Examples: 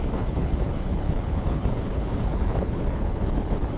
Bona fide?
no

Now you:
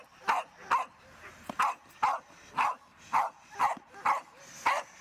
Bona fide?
yes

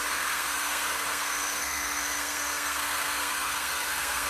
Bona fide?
no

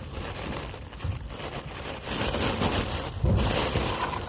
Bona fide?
no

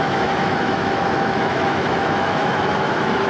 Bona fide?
no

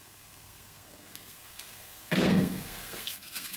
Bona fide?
no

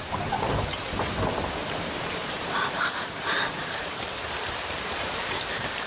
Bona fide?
no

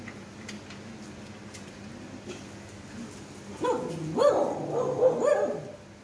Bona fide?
yes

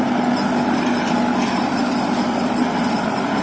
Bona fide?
yes